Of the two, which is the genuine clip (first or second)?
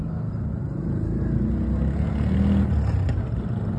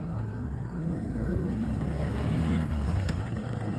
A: first